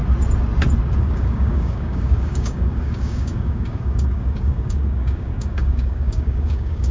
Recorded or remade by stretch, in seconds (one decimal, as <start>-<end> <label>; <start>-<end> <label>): 0.0-1.0 recorded; 1.0-6.9 remade